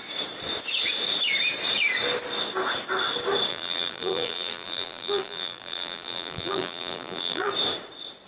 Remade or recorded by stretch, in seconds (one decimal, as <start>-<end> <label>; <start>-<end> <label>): 0.0-3.5 recorded; 3.5-7.5 remade; 7.5-8.3 recorded